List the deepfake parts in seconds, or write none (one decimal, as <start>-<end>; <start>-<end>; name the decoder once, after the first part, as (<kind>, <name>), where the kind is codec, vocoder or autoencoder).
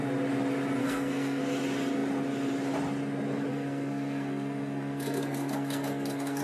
0.8-1.4 (codec, SNAC); 3.5-6.4